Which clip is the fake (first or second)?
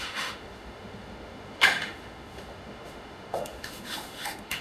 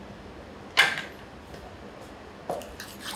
first